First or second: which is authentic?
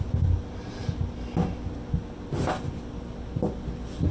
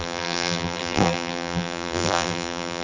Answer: first